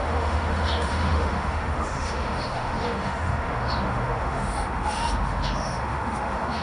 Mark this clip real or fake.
fake